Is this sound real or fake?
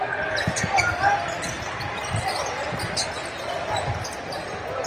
real